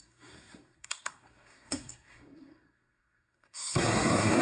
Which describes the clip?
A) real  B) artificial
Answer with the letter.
B